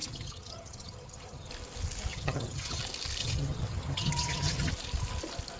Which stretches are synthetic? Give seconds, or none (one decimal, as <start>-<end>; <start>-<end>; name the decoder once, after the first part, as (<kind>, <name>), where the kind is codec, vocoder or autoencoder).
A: 0.0-1.5 (vocoder, HiFi-GAN); 2.1-2.8; 3.2-4.7